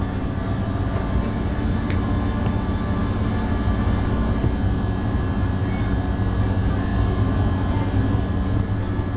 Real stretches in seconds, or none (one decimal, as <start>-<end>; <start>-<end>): 0.0-9.2